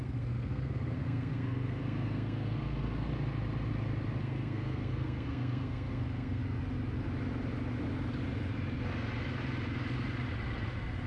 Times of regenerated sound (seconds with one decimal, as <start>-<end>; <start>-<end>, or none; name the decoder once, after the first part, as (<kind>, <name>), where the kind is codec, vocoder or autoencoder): 0.0-3.1 (codec, SNAC); 4.2-6.4